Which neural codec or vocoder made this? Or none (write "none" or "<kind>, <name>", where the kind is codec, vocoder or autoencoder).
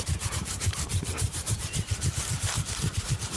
vocoder, BigVGAN v2